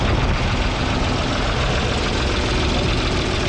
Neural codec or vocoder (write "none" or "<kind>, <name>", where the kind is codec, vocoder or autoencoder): none